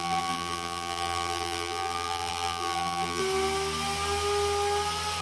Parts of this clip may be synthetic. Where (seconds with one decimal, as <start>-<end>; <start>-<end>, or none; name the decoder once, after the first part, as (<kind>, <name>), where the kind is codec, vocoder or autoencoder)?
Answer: 0.0-3.2 (vocoder, BigVGAN v2)